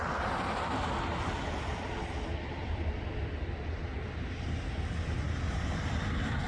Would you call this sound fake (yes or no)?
no